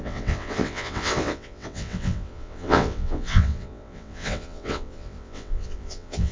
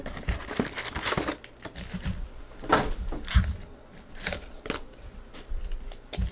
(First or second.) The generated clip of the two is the first